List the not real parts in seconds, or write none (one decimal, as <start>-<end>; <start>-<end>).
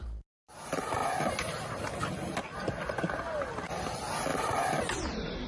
none